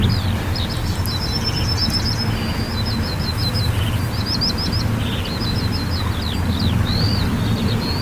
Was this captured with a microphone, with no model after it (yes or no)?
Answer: yes